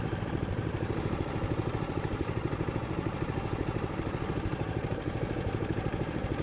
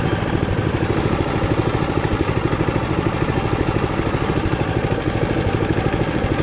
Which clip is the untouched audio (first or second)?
second